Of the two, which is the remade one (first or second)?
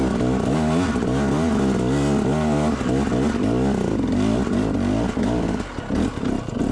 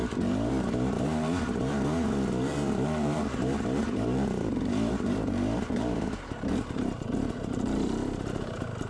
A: second